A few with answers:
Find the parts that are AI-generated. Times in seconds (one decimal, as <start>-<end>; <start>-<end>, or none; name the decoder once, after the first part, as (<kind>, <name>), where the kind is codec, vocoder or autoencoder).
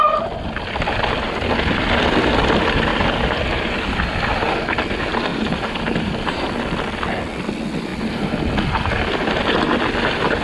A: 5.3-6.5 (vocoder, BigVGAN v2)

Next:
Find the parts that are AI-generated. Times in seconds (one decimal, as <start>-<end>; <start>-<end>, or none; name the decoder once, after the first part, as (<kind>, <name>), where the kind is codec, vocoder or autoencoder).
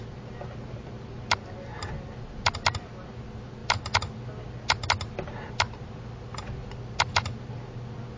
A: none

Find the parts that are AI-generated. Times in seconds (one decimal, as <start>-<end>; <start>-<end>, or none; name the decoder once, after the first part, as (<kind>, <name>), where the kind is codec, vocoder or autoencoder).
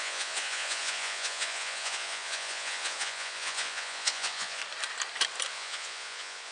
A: 0.0-4.6 (vocoder, Vocos); 5.5-6.5